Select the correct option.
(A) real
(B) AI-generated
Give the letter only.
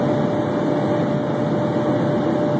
A